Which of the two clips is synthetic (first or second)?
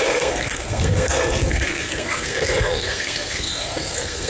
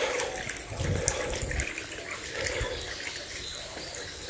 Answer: first